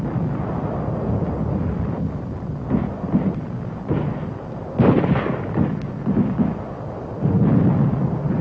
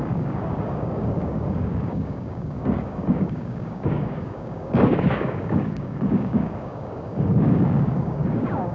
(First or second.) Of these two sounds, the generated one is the second